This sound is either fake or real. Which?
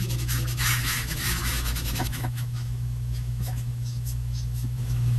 fake